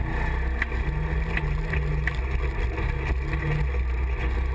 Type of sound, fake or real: real